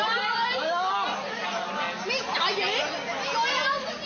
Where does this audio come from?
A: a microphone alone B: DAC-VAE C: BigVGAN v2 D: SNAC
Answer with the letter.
A